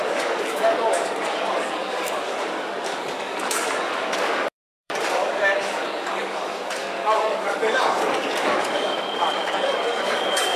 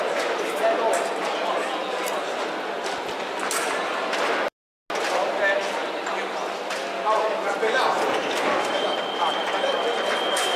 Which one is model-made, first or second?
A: first